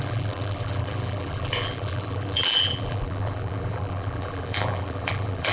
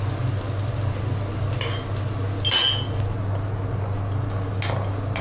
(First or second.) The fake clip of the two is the first